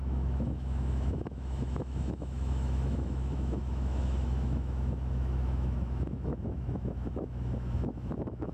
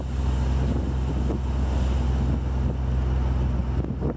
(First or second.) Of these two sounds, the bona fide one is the second